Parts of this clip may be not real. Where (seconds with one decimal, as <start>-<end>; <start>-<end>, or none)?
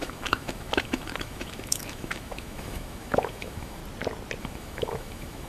0.0-3.8; 4.4-5.5